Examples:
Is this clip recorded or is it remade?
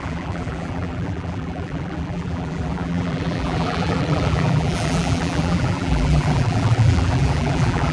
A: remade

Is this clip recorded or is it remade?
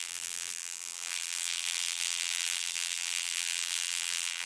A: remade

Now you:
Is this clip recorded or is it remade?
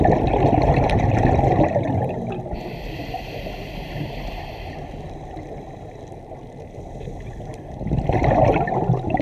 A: recorded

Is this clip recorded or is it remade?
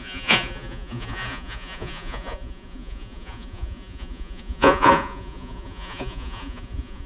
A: remade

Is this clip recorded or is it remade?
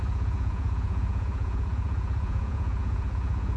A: remade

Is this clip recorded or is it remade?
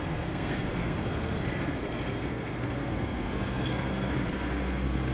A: remade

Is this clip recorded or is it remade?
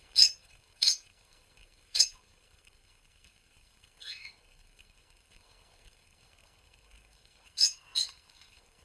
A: remade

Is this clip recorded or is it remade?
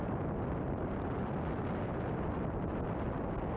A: recorded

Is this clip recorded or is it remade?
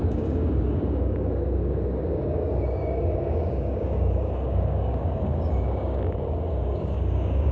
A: remade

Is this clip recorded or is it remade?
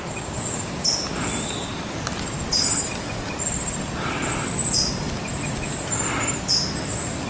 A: recorded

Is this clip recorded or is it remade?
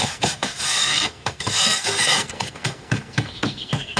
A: remade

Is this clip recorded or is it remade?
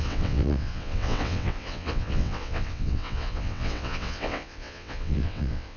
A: remade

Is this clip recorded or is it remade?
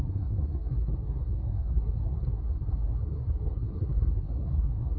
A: remade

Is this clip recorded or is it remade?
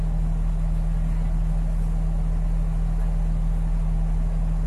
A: recorded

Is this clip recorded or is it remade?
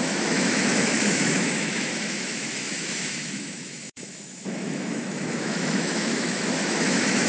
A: remade